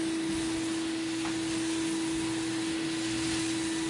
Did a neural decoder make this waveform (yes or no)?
no